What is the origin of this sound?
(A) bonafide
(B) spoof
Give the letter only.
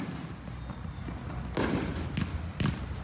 A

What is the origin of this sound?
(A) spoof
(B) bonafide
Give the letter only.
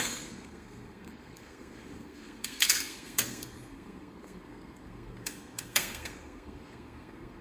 A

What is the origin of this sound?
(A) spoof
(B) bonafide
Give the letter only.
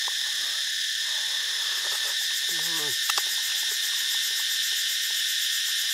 B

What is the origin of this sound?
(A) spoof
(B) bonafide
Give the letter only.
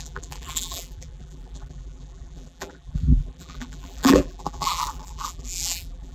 A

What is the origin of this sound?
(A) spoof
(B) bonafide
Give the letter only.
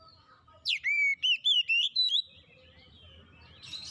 A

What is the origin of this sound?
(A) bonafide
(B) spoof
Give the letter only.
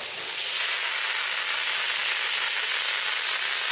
A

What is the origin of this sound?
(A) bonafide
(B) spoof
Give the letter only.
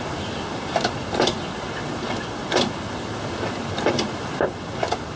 B